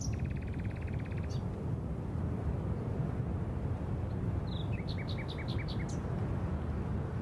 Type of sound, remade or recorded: recorded